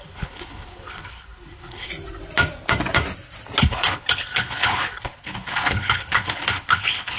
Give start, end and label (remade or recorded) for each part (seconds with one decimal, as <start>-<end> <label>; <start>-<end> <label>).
0.0-1.9 remade; 1.9-3.6 recorded; 3.6-7.2 remade